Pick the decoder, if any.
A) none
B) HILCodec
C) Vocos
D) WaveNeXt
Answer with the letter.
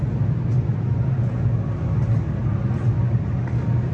A